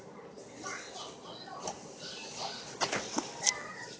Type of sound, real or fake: real